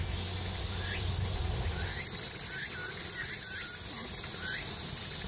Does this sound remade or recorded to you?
recorded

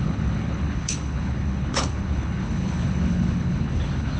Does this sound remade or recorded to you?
remade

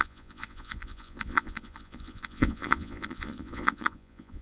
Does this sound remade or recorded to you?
remade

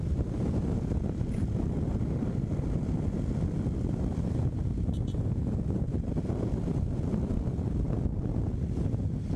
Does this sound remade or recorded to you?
recorded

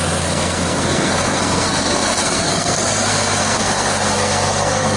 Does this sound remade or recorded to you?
remade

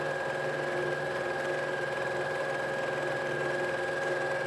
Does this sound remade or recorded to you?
recorded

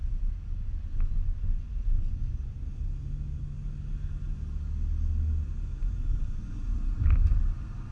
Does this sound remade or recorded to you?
recorded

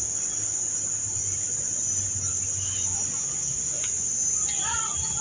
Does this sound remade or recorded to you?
recorded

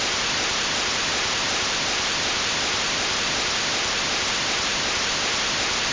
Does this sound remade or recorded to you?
recorded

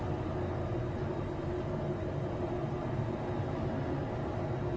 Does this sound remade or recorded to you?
recorded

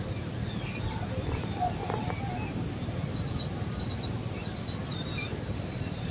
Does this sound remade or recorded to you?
recorded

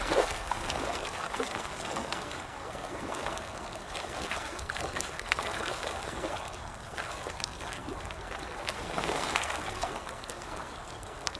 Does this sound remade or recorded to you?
remade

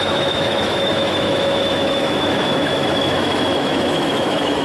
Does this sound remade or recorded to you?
remade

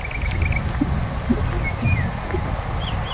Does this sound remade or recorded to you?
recorded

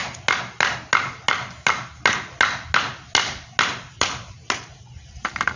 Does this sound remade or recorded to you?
recorded